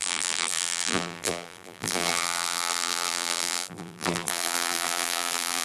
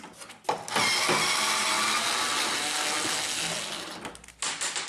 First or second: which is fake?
first